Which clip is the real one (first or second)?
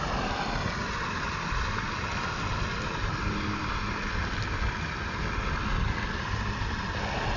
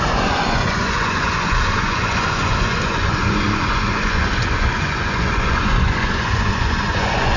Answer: first